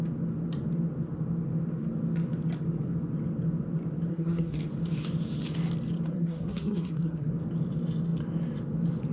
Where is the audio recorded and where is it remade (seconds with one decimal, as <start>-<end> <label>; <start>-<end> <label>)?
0.0-4.1 recorded; 4.1-4.6 remade; 4.6-6.1 recorded; 6.1-7.3 remade; 7.3-9.1 recorded